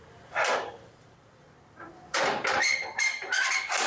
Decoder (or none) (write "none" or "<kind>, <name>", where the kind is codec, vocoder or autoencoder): vocoder, BigVGAN v2